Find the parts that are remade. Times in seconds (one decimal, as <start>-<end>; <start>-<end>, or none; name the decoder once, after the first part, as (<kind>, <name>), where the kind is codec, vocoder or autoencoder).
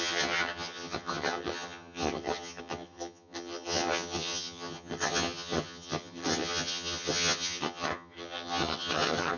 0.0-9.4 (vocoder, HiFi-GAN)